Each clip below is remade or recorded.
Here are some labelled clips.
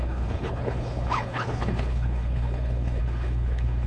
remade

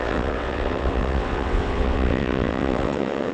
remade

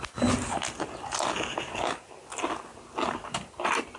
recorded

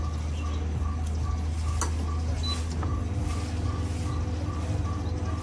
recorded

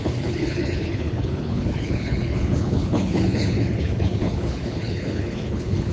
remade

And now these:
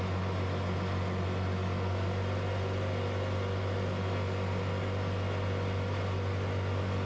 recorded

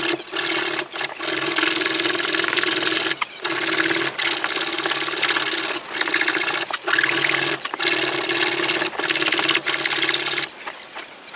recorded